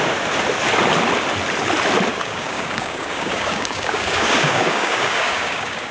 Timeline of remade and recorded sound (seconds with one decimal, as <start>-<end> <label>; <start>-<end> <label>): 0.0-2.1 recorded; 2.1-5.9 remade